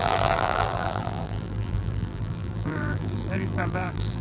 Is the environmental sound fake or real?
fake